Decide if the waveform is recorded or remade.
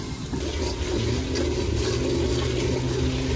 recorded